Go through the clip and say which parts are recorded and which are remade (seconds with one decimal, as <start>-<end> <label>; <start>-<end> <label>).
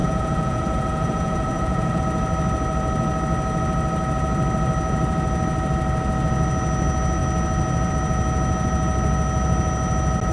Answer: 0.0-2.0 remade; 2.0-10.3 recorded